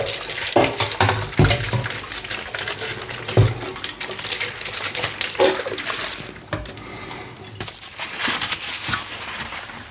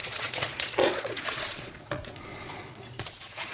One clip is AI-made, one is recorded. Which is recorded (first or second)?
first